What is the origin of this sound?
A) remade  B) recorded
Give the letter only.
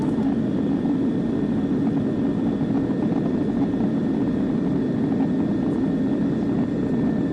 B